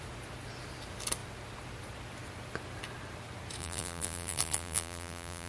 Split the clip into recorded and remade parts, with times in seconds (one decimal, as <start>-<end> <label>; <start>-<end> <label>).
0.0-3.6 recorded; 3.6-5.5 remade